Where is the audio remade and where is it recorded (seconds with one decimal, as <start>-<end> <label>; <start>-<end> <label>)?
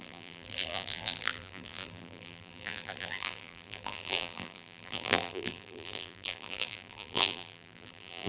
0.0-8.3 remade